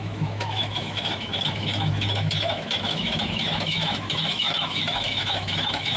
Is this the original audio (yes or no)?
no